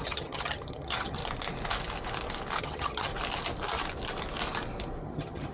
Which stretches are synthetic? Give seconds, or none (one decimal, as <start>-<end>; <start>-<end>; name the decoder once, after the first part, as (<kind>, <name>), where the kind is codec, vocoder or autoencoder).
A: 0.0-1.2 (vocoder, HiFi-GAN); 2.6-3.1; 5.0-5.5